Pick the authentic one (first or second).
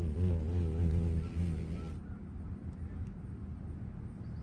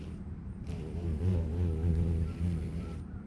first